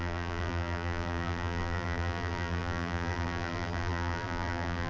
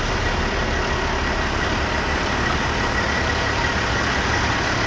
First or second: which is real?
second